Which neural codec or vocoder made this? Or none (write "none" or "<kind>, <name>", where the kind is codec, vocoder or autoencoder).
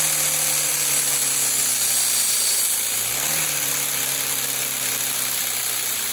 none